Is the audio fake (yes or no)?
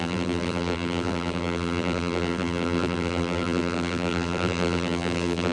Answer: yes